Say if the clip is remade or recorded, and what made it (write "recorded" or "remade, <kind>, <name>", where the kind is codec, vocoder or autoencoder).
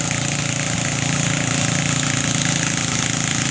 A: recorded